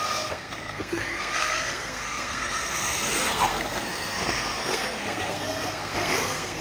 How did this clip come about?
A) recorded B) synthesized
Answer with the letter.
B